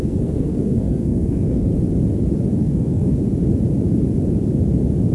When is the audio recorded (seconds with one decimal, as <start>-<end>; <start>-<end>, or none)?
1.7-2.6; 3.1-5.1